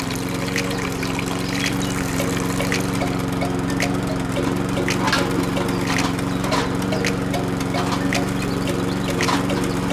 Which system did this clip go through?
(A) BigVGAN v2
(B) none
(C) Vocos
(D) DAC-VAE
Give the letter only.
B